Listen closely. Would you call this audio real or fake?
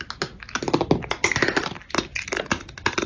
real